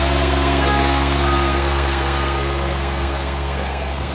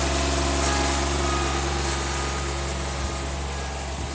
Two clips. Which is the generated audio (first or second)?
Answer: first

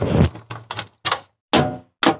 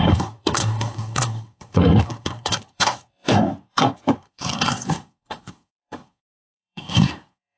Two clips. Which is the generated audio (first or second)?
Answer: second